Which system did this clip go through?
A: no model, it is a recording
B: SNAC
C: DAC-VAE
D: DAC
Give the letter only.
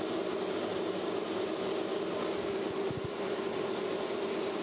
A